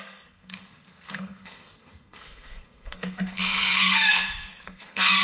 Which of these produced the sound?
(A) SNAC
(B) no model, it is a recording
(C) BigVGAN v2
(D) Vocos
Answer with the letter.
A